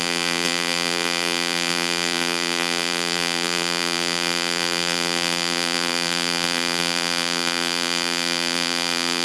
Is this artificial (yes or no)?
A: yes